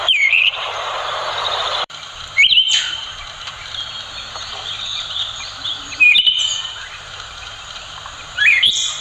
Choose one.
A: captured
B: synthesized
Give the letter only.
B